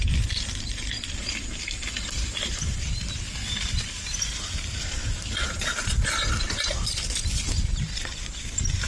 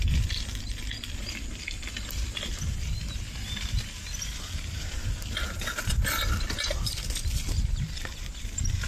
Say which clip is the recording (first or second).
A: second